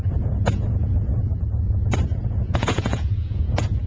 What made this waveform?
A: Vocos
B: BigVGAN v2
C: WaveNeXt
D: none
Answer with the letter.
A